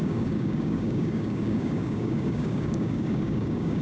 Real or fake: fake